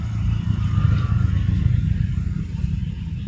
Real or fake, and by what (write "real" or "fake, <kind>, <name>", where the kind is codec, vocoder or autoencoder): real